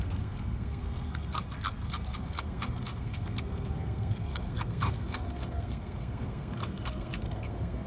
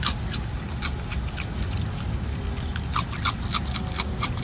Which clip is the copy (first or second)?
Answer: first